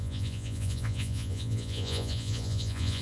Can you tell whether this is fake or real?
fake